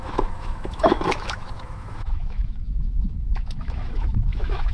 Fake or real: fake